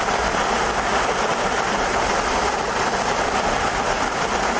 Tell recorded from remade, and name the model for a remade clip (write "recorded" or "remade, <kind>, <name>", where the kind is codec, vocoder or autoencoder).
recorded